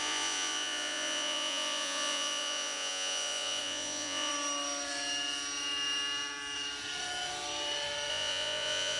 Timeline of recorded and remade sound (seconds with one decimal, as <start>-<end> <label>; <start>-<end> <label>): 0.0-4.3 remade; 4.3-8.1 recorded; 8.1-9.0 remade